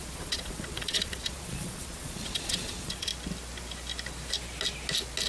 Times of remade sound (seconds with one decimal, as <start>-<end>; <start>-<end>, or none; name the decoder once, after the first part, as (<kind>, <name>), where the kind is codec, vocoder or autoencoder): 0.0-3.1 (vocoder, Vocos)